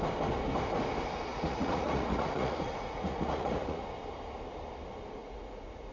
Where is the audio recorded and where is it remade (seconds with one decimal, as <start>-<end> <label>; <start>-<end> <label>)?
0.0-1.3 recorded; 1.3-3.8 remade; 3.8-5.2 recorded; 5.2-5.9 remade